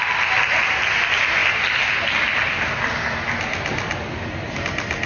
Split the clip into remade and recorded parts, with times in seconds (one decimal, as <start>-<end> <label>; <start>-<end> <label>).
0.0-5.1 recorded